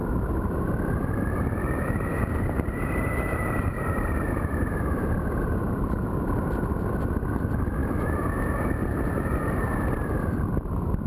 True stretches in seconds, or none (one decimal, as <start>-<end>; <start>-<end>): 0.6-1.8; 6.4-7.8; 9.8-11.1